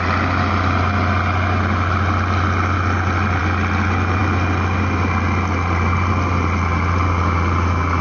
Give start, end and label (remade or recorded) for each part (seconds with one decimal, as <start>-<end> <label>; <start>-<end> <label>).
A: 0.0-8.0 recorded